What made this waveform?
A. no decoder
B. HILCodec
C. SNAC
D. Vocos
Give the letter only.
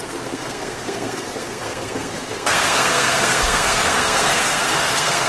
C